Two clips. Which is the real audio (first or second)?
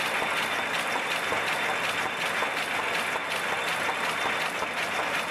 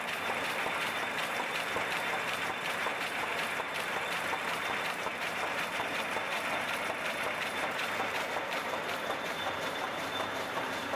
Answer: first